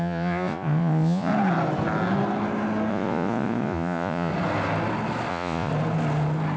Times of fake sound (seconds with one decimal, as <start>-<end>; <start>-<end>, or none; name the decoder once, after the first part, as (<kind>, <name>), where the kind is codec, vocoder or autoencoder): 0.0-1.3 (vocoder, Vocos); 2.9-4.3; 5.3-5.7